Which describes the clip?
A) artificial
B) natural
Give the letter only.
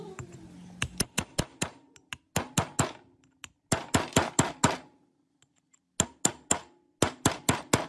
B